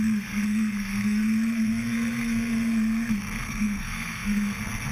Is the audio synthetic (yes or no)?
yes